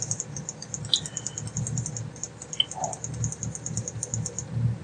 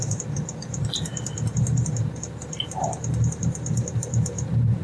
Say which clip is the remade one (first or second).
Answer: second